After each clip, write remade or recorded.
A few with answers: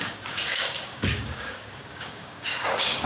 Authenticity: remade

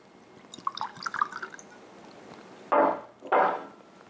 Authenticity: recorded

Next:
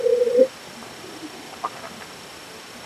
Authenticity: recorded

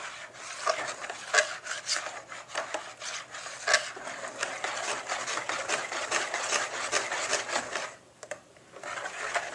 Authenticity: recorded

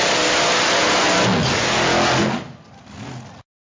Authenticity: recorded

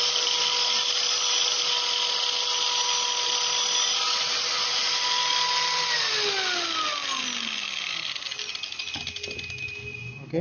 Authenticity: recorded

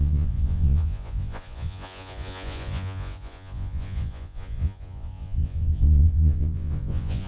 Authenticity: remade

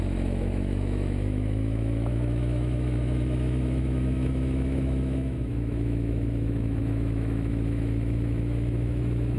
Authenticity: remade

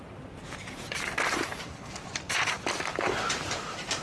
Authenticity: remade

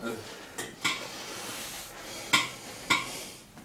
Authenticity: recorded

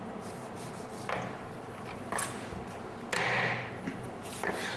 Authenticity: recorded